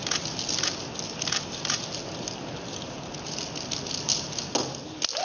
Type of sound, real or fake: real